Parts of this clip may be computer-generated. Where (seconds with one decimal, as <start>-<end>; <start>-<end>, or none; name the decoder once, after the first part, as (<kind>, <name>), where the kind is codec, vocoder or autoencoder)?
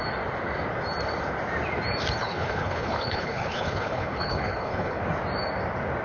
2.2-5.0 (codec, HILCodec)